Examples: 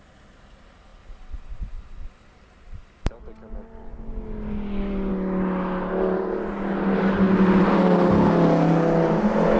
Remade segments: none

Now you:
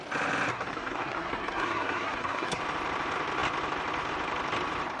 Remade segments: 0.5-2.6 (codec, SNAC)

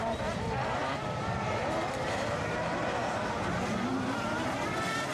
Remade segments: 0.0-3.0 (vocoder, BigVGAN v2); 3.9-5.1

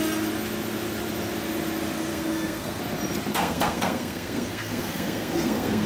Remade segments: 2.1-2.8 (codec, SNAC); 3.3-5.9

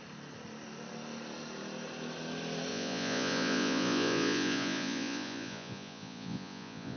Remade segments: 2.7-7.0 (vocoder, Vocos)

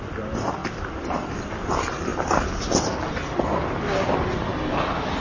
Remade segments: none

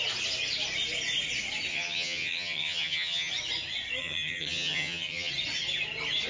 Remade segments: 1.7-3.3 (vocoder, HiFi-GAN); 4.0-5.3